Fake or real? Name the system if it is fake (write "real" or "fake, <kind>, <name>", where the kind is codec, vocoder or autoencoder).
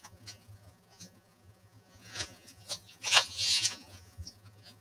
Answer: fake, vocoder, Vocos